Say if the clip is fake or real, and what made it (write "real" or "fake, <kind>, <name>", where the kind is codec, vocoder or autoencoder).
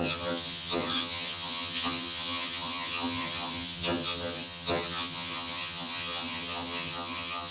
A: fake, vocoder, HiFi-GAN